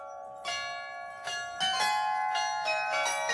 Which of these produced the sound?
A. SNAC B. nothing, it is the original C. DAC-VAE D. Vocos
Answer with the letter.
B